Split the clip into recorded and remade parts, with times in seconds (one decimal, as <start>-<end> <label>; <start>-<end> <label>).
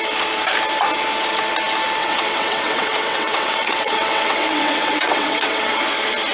0.0-2.0 recorded; 2.0-5.8 remade; 5.8-6.3 recorded